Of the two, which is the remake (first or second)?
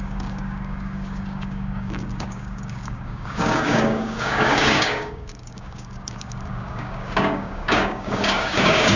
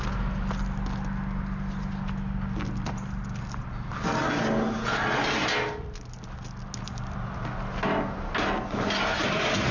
first